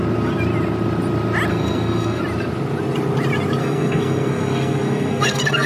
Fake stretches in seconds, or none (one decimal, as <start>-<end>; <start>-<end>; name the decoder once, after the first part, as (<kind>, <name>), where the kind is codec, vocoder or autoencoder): 1.5-2.2 (codec, SNAC); 3.6-5.7